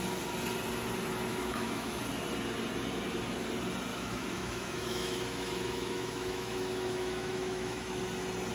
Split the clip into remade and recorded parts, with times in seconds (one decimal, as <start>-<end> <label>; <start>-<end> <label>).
0.0-1.3 recorded; 1.3-2.0 remade; 2.0-3.9 recorded; 3.9-8.0 remade; 8.0-8.5 recorded